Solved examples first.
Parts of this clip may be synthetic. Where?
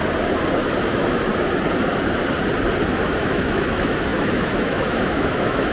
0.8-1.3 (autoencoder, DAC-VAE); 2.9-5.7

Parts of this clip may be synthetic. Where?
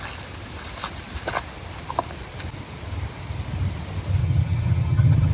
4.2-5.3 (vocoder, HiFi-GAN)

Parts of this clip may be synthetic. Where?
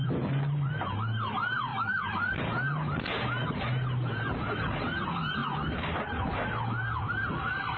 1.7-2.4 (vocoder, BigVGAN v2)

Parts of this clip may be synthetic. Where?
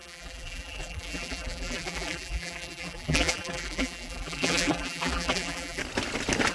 0.0-5.8 (vocoder, BigVGAN v2)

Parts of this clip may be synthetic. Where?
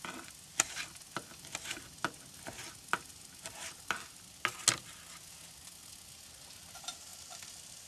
none